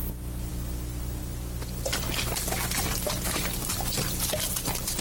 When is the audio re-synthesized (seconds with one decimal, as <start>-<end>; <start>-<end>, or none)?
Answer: none